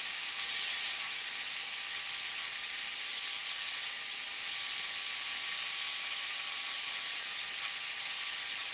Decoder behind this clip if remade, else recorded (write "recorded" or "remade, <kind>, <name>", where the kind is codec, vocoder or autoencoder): recorded